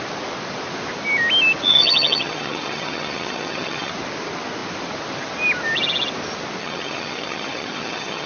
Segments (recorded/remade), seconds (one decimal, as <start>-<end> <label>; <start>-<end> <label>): 0.0-1.7 recorded; 1.7-3.9 remade; 3.9-6.6 recorded; 6.6-8.3 remade

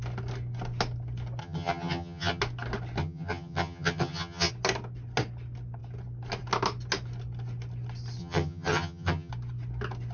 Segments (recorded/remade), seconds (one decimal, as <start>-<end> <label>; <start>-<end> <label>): 0.0-1.4 recorded; 1.4-2.4 remade; 2.4-3.0 recorded; 3.0-4.5 remade; 4.5-8.2 recorded; 8.2-9.3 remade; 9.3-10.1 recorded

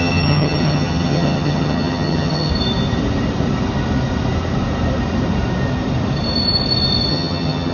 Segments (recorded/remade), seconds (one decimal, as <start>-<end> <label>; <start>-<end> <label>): 0.0-2.5 remade; 2.5-7.1 recorded; 7.1-7.7 remade

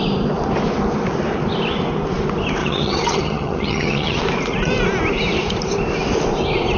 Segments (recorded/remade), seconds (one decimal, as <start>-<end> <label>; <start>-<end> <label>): 0.0-2.6 recorded; 2.6-4.2 remade; 4.2-6.8 recorded

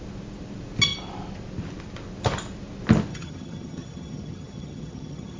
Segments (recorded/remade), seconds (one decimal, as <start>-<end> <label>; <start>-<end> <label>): 0.0-3.1 recorded; 3.1-5.4 remade